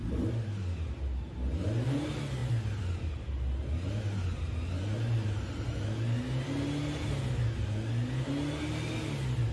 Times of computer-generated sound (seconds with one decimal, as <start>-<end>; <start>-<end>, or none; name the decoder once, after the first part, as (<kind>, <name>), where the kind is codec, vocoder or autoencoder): none